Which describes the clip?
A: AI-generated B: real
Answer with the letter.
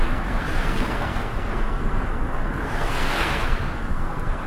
A